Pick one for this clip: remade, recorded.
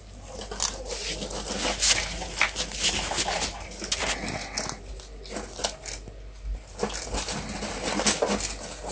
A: recorded